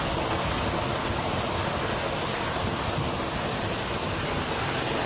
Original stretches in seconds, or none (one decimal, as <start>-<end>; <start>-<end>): 0.0-5.1